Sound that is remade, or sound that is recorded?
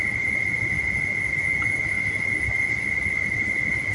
recorded